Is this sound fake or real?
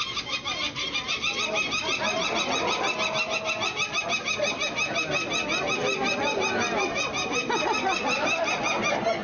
real